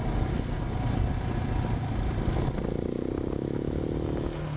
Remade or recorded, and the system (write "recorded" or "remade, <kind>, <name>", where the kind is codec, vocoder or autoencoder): recorded